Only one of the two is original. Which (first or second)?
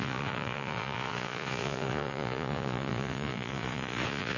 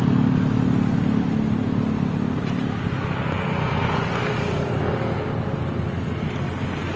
second